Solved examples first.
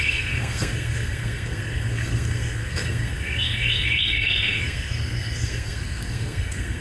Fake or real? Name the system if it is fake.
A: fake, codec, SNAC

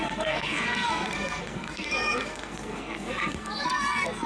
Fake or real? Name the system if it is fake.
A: fake, codec, SNAC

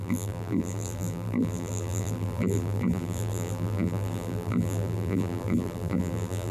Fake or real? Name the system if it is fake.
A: fake, vocoder, BigVGAN v2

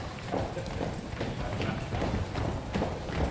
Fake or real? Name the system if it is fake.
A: real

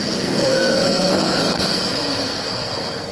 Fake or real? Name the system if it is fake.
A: fake, codec, SNAC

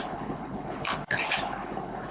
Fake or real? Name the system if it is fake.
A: fake, codec, HILCodec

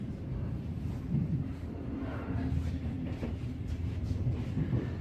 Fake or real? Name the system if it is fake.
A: fake, vocoder, BigVGAN v2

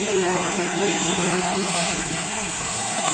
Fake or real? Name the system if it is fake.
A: fake, codec, SNAC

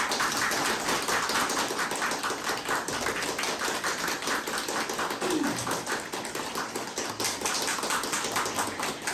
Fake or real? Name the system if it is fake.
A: real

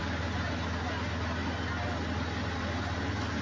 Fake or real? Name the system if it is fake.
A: real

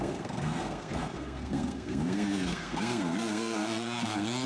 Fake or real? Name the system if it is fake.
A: fake, codec, SNAC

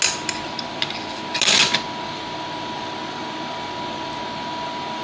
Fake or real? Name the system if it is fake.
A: real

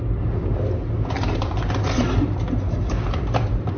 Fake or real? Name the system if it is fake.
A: real